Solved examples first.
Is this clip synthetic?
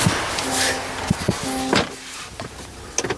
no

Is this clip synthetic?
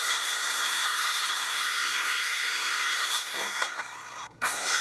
yes